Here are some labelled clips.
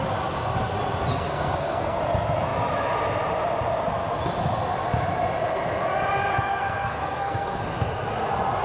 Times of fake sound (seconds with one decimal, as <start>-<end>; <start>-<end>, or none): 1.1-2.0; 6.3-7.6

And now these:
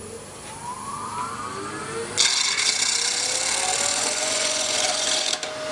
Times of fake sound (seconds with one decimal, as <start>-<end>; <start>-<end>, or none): 3.9-5.3

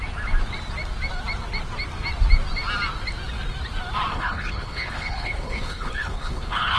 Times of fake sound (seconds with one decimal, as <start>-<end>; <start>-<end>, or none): 4.1-6.8